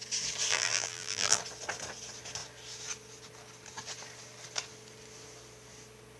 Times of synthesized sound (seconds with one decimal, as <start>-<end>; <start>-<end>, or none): 0.5-1.4